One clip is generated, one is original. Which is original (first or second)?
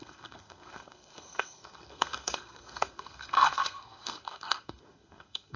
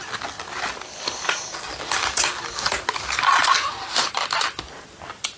second